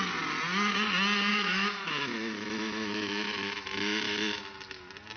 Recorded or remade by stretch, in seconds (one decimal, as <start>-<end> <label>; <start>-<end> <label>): 0.0-1.3 recorded; 1.3-4.4 remade; 4.4-5.2 recorded